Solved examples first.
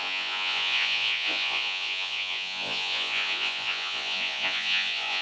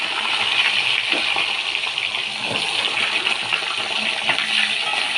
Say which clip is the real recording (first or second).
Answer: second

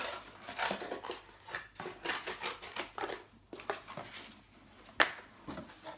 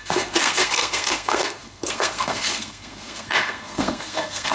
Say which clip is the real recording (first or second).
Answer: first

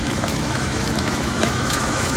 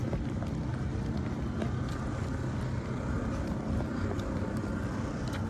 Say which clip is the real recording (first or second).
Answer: second